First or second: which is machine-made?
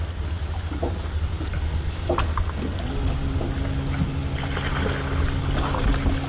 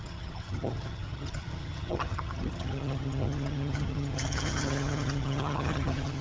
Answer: second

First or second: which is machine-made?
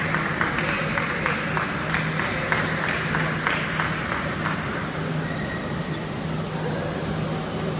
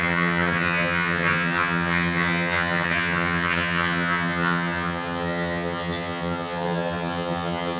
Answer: second